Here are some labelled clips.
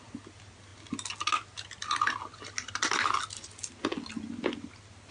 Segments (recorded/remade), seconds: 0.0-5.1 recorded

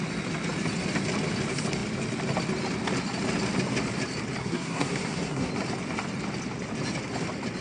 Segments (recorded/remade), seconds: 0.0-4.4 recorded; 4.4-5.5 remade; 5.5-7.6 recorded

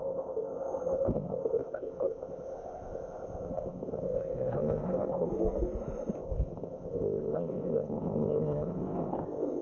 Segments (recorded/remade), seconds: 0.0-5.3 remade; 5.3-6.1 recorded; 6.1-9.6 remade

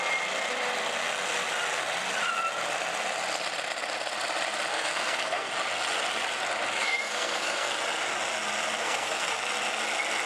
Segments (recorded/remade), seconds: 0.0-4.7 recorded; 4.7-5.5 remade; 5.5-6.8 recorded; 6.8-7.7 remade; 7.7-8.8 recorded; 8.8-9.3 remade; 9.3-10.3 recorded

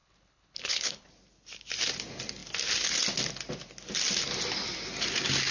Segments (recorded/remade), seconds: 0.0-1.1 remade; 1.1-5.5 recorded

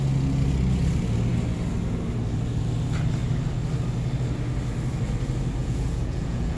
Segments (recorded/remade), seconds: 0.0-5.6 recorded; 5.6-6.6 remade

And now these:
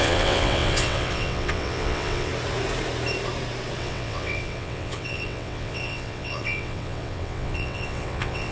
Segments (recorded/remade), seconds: 0.0-2.3 remade; 2.3-3.8 recorded; 3.8-8.5 remade